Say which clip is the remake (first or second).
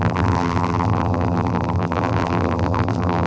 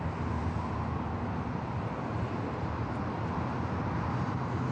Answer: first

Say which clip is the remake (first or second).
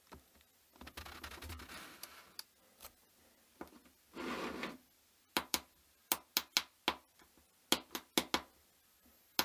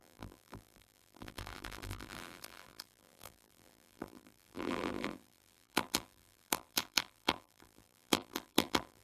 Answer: second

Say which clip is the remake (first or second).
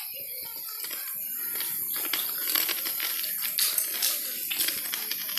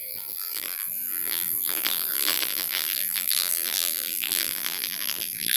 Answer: second